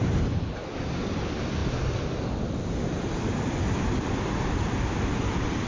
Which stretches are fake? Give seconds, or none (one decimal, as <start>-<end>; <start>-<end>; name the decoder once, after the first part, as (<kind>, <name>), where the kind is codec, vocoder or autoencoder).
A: none